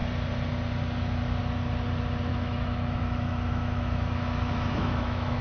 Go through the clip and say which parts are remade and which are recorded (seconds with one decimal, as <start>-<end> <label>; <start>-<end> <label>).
0.0-2.3 recorded; 2.3-5.4 remade